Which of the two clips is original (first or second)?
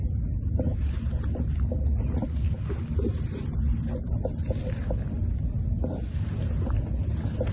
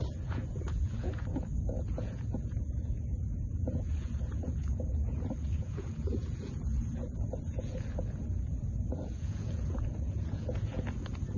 first